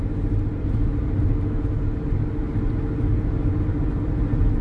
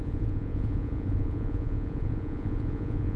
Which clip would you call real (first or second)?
first